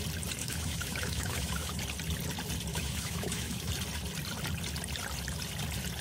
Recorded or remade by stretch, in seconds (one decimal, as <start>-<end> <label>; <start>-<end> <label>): 0.0-0.4 recorded; 0.4-1.8 remade; 1.8-2.7 recorded; 2.7-3.7 remade; 3.7-6.0 recorded